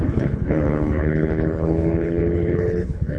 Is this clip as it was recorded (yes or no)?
no